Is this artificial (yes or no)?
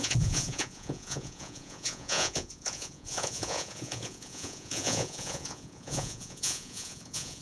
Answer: yes